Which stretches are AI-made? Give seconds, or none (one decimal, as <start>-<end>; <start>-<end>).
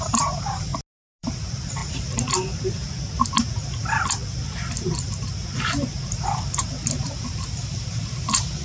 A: 0.0-0.7; 1.2-1.8; 6.1-8.6